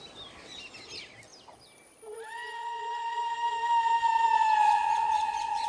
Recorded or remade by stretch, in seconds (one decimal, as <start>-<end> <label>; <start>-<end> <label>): 0.0-4.6 recorded; 4.6-5.7 remade